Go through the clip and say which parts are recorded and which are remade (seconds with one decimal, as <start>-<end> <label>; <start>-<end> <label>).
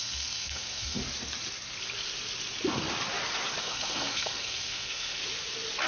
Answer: 0.0-1.0 remade; 1.0-3.6 recorded; 3.6-5.2 remade; 5.2-5.9 recorded